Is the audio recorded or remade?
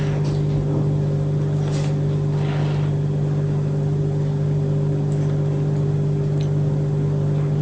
recorded